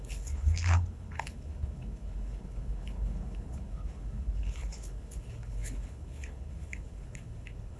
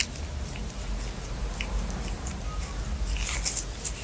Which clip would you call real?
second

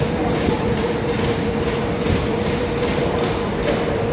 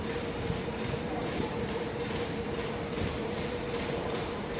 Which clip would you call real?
first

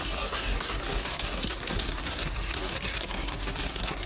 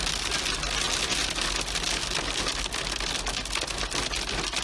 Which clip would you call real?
second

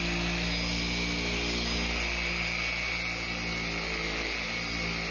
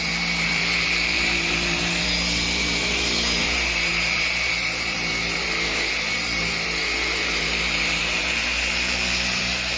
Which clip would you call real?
first